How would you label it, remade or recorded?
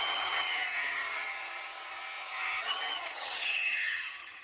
remade